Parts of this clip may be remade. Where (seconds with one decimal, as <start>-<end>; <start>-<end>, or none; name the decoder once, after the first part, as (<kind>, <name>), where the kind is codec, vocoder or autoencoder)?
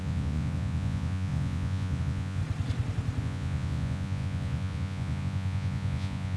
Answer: 0.0-2.4 (vocoder, Vocos); 3.2-6.4